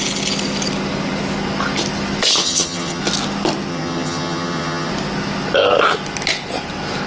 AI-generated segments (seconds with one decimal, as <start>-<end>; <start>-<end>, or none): 2.4-3.0; 3.7-4.9